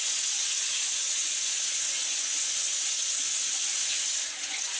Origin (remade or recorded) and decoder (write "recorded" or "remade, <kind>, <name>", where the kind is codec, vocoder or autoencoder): remade, vocoder, Vocos